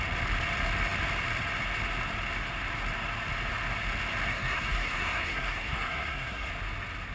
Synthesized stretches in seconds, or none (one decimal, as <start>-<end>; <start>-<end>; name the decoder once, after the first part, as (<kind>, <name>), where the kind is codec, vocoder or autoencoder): 4.3-6.5 (codec, SNAC)